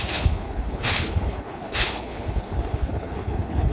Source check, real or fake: fake